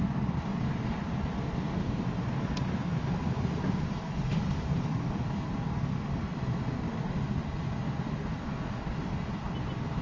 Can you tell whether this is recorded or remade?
recorded